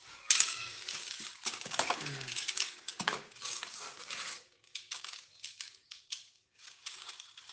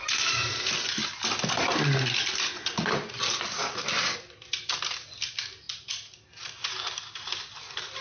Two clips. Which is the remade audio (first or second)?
first